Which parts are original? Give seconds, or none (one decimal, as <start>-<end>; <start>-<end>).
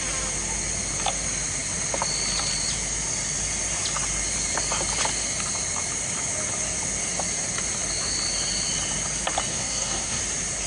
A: 0.0-9.5; 10.2-10.7